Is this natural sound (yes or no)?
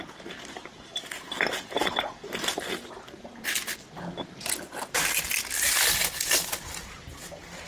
yes